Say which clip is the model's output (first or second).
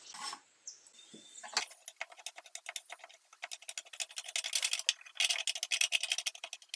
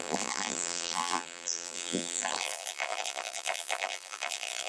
second